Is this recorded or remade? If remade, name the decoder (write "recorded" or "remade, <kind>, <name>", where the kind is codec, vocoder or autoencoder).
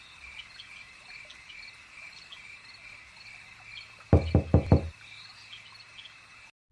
recorded